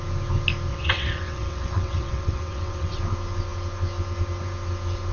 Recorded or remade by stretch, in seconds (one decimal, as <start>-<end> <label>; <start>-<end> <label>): 0.0-0.7 recorded; 0.7-3.0 remade; 3.0-5.1 recorded